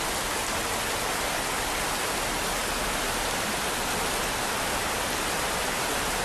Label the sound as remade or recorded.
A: recorded